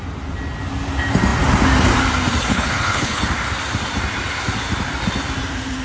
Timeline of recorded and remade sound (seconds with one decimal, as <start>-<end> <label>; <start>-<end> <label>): 0.0-2.5 recorded; 2.5-3.2 remade; 3.2-5.8 recorded